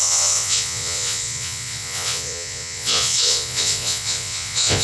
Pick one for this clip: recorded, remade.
remade